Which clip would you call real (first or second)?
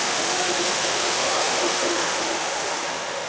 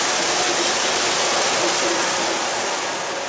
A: second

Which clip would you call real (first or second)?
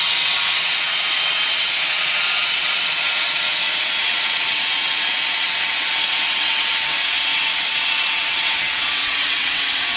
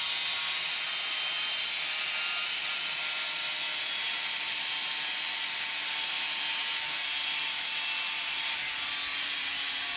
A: second